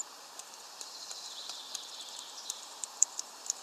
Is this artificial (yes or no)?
yes